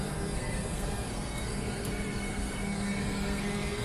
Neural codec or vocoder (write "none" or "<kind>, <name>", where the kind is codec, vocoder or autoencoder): codec, SNAC